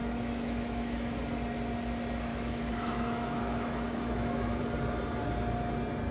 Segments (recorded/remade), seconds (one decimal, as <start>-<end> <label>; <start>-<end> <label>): 0.0-1.2 remade; 1.2-2.3 recorded; 2.3-4.6 remade; 4.6-6.1 recorded